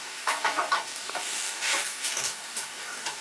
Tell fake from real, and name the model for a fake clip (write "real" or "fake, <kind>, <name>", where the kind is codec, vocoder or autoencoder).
fake, codec, DAC